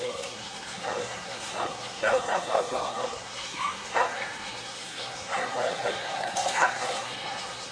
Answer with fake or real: fake